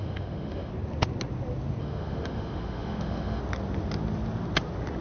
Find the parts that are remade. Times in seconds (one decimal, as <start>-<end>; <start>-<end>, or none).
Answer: 0.0-0.7; 1.8-3.4